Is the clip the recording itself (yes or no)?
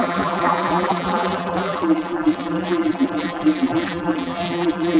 no